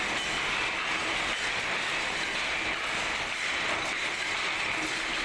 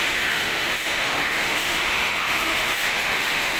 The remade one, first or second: second